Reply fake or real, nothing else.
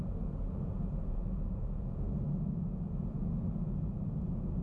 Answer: fake